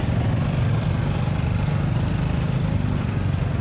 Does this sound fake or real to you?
real